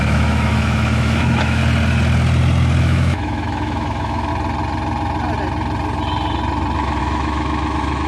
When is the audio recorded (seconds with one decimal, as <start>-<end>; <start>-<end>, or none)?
1.6-2.8; 4.3-7.0